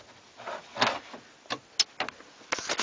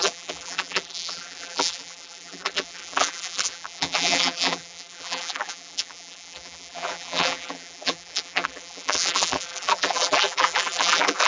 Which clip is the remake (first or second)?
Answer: second